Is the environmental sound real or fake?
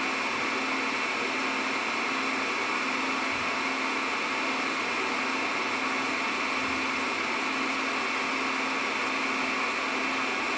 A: real